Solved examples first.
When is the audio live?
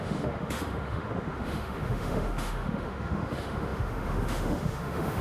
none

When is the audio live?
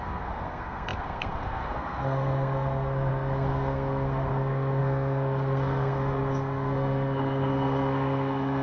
none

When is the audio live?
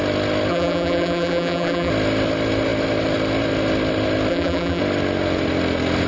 0.0-0.5; 1.9-4.3; 4.8-6.1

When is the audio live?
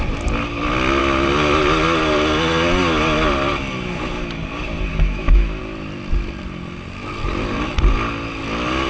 0.0-4.9; 5.6-8.9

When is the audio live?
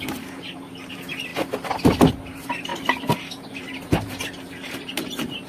1.3-2.1